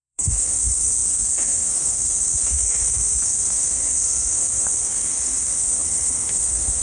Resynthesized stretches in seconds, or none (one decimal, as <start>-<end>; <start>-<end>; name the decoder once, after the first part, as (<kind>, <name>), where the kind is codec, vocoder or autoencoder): 0.0-6.8 (codec, SNAC)